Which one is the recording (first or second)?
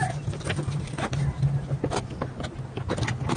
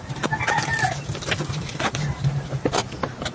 first